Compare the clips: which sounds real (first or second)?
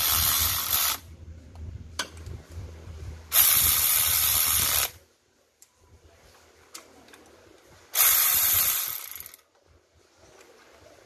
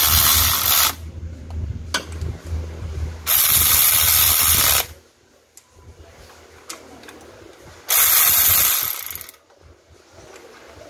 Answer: second